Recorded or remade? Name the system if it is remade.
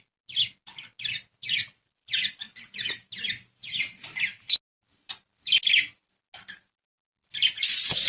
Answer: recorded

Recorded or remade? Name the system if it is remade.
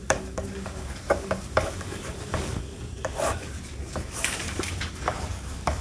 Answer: remade, codec, DAC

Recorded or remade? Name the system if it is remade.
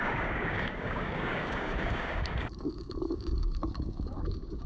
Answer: remade, codec, DAC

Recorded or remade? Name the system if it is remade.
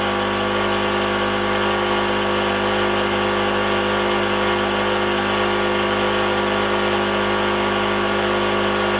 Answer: recorded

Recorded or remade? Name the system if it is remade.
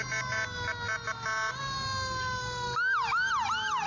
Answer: recorded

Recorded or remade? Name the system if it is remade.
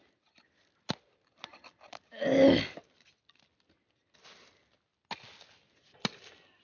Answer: recorded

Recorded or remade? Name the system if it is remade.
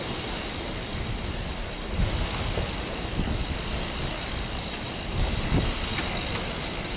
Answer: recorded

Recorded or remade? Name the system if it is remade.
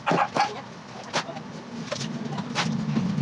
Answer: recorded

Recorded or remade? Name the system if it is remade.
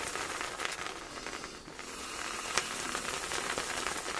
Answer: recorded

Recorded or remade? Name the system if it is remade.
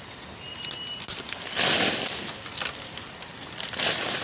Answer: recorded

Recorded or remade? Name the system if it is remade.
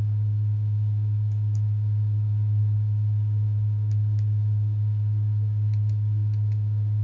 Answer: remade, codec, DAC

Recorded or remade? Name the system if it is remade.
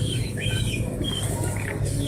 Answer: remade, codec, DAC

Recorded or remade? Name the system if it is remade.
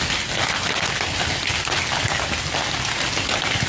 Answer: recorded